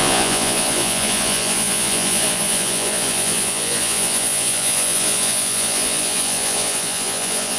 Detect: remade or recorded remade